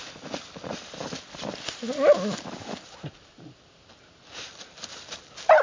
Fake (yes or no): no